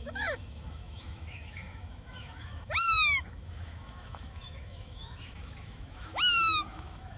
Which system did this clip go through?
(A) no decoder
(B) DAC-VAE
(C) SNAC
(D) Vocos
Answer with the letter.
B